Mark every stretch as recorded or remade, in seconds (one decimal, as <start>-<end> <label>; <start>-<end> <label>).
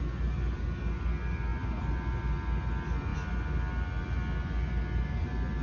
0.0-5.6 recorded